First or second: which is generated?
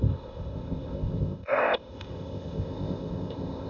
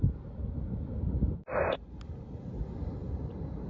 first